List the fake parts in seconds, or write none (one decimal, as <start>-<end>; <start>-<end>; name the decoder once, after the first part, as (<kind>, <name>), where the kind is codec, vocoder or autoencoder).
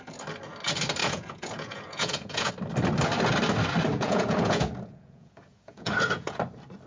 1.0-2.5 (vocoder, Vocos); 3.9-6.4